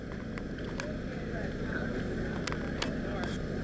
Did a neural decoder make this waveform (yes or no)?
no